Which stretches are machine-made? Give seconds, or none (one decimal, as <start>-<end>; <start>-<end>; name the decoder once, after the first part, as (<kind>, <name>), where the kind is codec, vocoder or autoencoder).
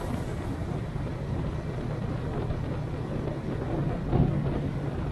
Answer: 0.6-1.4 (vocoder, BigVGAN v2)